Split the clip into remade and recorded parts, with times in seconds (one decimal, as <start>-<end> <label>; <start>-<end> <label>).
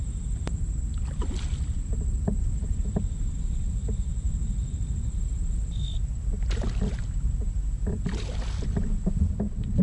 0.0-9.8 remade